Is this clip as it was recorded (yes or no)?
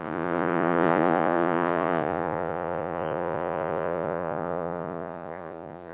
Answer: no